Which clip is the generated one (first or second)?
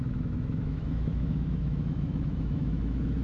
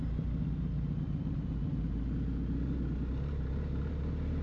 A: first